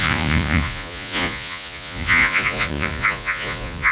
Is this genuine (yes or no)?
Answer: no